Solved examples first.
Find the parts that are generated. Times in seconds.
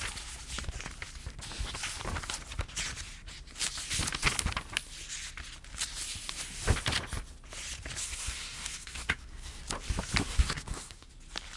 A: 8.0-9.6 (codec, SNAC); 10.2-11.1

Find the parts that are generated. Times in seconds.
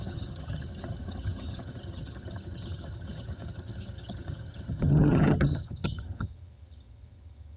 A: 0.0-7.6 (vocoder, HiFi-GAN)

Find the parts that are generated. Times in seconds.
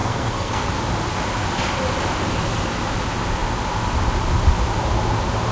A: 0.0-0.7 (codec, SNAC)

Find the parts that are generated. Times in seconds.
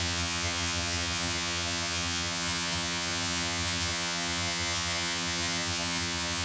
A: 0.0-6.4 (vocoder, HiFi-GAN)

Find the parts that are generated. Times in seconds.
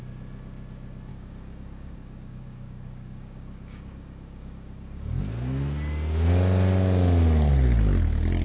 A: 1.1-5.2 (codec, DAC)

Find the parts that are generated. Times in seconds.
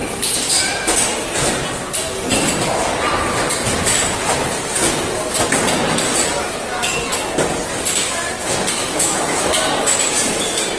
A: 8.8-9.5 (autoencoder, DAC-VAE)